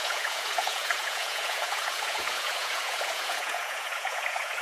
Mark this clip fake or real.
fake